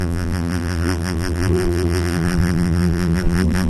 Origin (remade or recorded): remade